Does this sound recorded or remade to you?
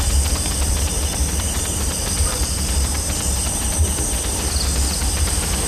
remade